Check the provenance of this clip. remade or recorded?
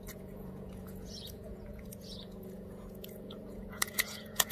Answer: remade